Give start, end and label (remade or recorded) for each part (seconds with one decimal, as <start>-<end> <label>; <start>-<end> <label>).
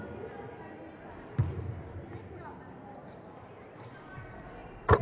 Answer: 0.0-1.4 recorded; 1.4-2.0 remade; 2.0-3.0 recorded; 3.0-5.0 remade